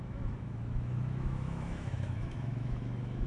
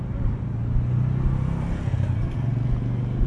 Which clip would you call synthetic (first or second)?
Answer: first